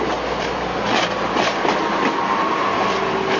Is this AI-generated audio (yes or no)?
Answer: no